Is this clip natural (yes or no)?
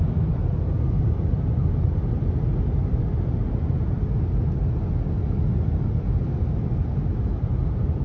yes